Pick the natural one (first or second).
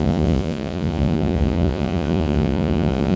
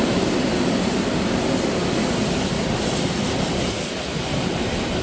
second